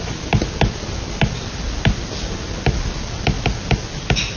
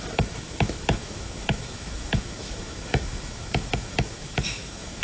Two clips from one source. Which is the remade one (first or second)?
second